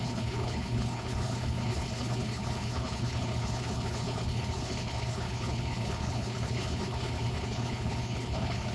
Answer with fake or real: fake